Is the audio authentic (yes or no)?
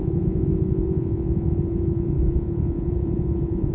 no